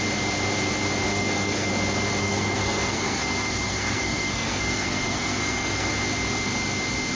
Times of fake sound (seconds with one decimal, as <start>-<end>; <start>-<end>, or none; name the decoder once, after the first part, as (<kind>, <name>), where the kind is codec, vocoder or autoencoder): 1.1-1.7 (codec, SNAC); 2.2-5.9